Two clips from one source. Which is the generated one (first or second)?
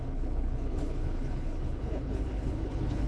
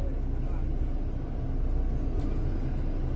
first